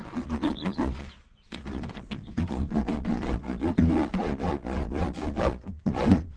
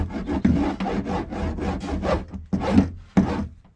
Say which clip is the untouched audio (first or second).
second